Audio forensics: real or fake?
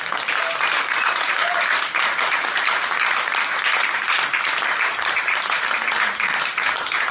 fake